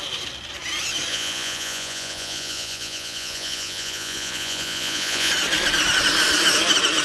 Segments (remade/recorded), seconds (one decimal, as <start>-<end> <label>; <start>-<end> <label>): 0.0-1.1 recorded; 1.1-5.3 remade; 5.3-7.0 recorded